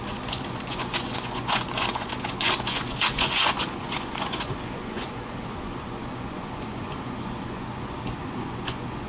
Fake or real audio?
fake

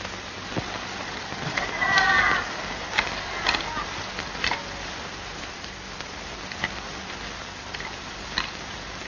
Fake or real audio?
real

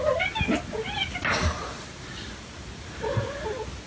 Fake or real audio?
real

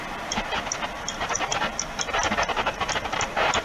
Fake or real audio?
real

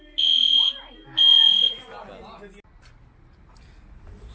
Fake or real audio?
real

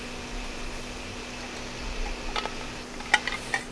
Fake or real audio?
real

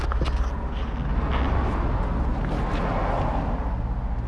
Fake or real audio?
real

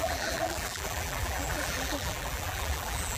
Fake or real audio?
fake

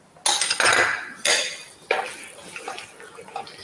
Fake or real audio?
real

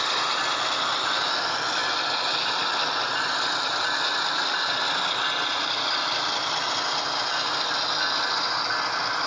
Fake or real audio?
real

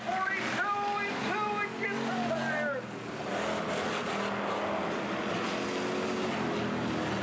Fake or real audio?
real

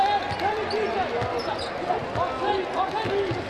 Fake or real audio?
real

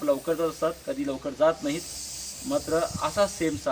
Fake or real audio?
real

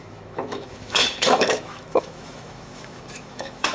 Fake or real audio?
fake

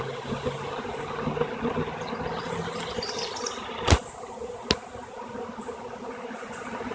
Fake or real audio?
real